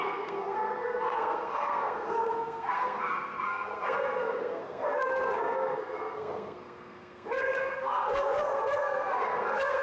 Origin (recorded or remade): remade